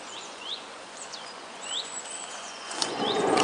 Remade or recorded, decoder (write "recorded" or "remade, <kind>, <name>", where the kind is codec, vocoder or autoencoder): remade, vocoder, Vocos